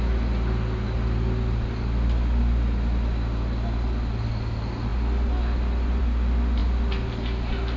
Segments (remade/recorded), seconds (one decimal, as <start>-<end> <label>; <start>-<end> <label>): 0.0-7.8 recorded